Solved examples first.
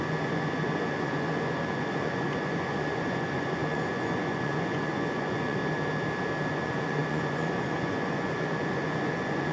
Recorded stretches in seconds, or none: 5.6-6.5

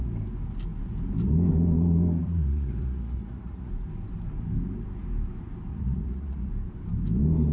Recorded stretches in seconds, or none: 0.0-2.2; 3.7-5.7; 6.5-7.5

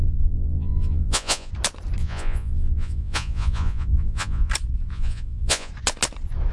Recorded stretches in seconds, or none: 1.5-2.0; 4.5-4.9; 5.7-6.5

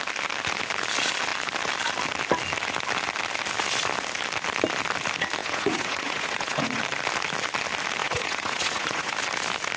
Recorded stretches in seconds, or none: 0.0-5.4; 6.8-8.0; 9.1-9.8

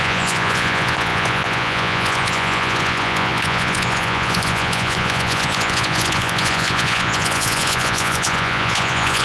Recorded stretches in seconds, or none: none

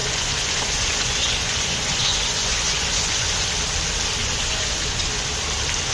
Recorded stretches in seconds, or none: 3.5-4.2; 5.3-5.9